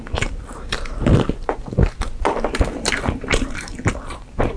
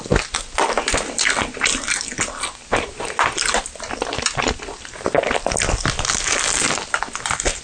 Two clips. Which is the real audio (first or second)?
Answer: second